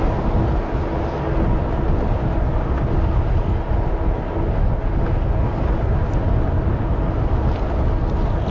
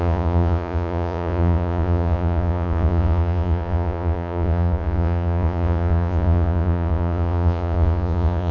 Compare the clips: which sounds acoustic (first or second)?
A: first